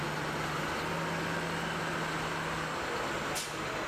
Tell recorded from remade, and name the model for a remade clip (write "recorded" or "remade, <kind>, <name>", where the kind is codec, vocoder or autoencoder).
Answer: recorded